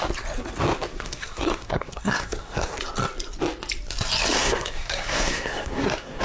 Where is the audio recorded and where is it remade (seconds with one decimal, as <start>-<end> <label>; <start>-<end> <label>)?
0.0-0.9 recorded; 0.9-2.8 remade; 2.8-4.4 recorded; 4.4-6.2 remade